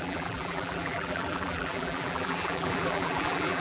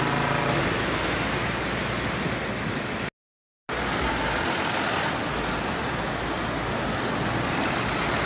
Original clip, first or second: second